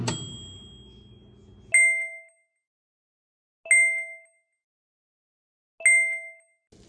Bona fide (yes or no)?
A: yes